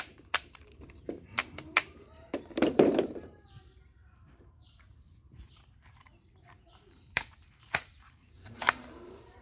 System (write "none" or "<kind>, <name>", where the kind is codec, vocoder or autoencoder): vocoder, BigVGAN v2